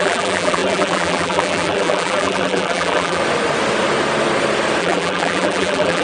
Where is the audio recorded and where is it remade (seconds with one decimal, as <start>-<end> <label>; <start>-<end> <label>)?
0.0-3.2 remade; 3.2-4.8 recorded; 4.8-6.0 remade